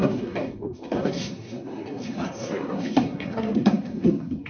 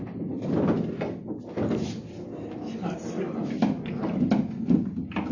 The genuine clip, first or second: second